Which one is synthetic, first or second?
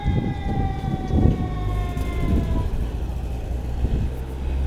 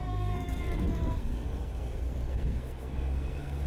second